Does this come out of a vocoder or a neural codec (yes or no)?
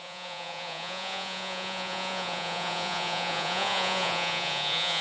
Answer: yes